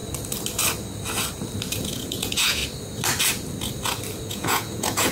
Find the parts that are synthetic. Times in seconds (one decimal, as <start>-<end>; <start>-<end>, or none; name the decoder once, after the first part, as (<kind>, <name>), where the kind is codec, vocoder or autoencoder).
1.8-2.6 (vocoder, Vocos); 4.3-5.1